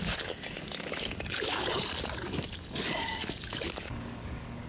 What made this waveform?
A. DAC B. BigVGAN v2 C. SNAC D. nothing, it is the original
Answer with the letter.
A